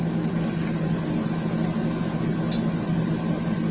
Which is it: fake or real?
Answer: real